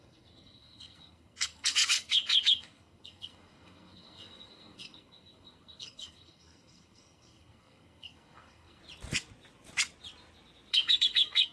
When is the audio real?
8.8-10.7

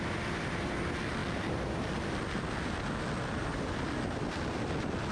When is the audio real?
0.0-5.1

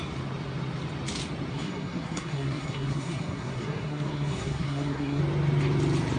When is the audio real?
0.0-1.5; 5.2-6.2

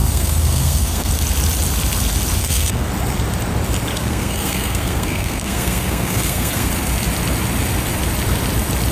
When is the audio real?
1.1-2.4; 2.9-3.9; 6.7-8.9

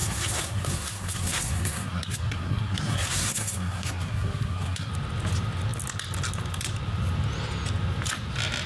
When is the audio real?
4.9-8.7

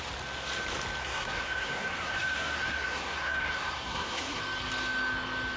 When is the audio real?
0.0-1.0; 4.4-5.6

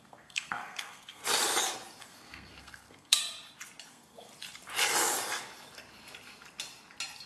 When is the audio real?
1.2-2.0; 3.2-3.9; 4.3-7.3